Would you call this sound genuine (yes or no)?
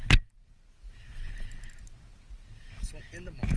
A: yes